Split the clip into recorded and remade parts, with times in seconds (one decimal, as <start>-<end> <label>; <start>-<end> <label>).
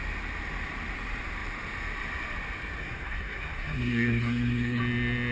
0.0-2.8 recorded; 2.8-4.8 remade; 4.8-5.3 recorded